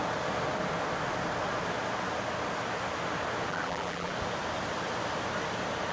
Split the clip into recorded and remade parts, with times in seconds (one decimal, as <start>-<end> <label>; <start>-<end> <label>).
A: 0.0-3.5 recorded; 3.5-4.1 remade; 4.1-5.9 recorded